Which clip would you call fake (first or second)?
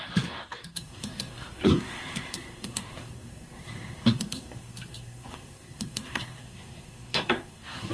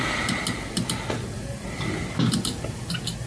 first